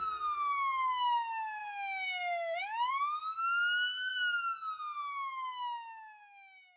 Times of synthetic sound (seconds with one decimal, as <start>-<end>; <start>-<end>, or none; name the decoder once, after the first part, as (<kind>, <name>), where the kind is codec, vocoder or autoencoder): none